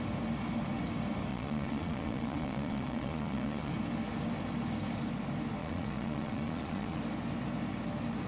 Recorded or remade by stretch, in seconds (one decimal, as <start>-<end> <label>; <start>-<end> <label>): 0.0-1.3 recorded; 1.3-3.7 remade; 3.7-5.6 recorded; 5.6-7.0 remade; 7.0-8.3 recorded